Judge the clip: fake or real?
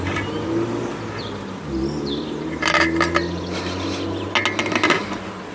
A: real